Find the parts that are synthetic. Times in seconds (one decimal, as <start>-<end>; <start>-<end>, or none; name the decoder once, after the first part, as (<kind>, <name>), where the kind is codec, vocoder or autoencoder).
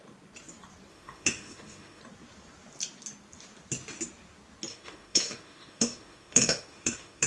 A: 0.9-2.0 (autoencoder, DAC-VAE); 4.7-7.3